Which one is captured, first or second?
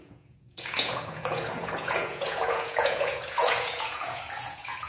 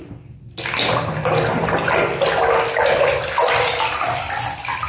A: second